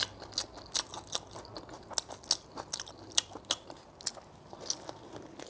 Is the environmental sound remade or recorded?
recorded